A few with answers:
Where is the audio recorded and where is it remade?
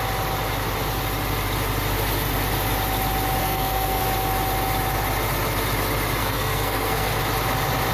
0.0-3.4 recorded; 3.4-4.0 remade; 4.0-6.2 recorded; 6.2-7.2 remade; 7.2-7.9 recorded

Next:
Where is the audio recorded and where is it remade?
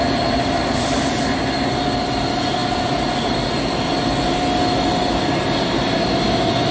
0.0-6.7 recorded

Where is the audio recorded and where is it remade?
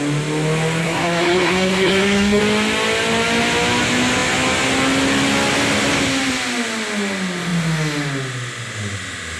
0.0-0.8 recorded; 0.8-2.4 remade; 2.4-9.4 recorded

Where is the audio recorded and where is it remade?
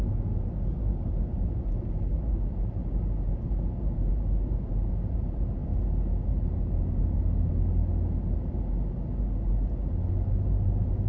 0.0-11.1 recorded